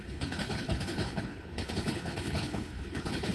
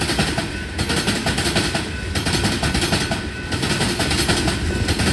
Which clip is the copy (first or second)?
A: first